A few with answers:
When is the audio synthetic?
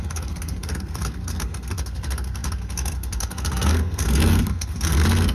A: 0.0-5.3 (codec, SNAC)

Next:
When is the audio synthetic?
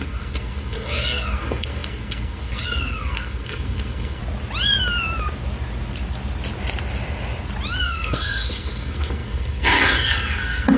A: 0.0-4.2 (codec, SNAC); 7.8-10.8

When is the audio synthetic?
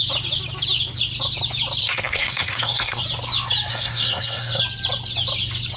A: 1.8-3.0 (codec, SNAC); 3.7-4.6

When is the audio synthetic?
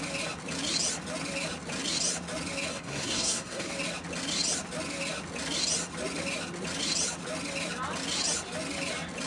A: 2.7-3.7 (codec, SNAC)